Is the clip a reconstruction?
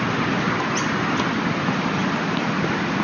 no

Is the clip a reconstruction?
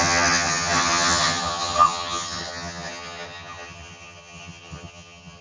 yes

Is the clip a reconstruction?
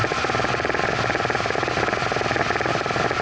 no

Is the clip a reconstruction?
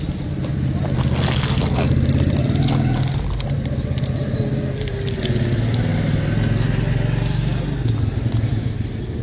no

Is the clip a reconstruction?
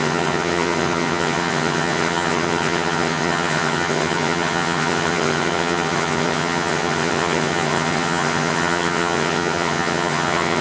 yes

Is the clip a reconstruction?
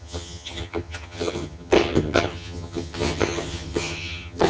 yes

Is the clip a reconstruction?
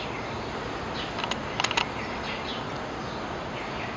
no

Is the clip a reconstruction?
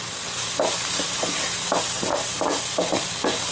no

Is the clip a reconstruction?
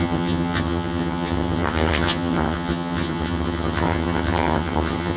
yes